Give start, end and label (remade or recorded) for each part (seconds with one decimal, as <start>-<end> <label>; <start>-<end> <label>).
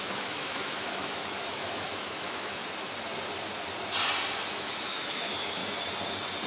0.0-2.6 remade; 2.6-4.5 recorded; 4.5-5.6 remade; 5.6-6.5 recorded